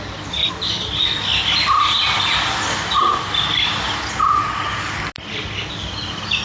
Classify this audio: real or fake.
real